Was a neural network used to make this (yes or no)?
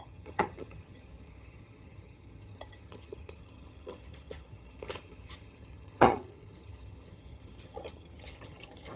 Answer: yes